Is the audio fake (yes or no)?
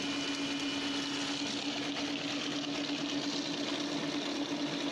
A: no